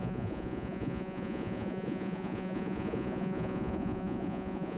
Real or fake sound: fake